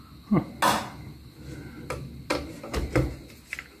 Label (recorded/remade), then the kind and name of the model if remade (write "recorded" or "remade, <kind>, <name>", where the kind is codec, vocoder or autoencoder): recorded